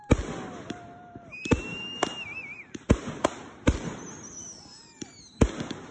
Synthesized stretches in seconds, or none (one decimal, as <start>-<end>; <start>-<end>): none